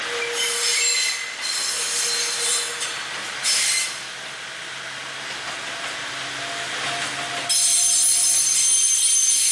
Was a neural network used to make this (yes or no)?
no